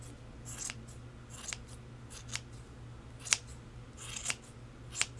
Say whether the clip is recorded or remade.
recorded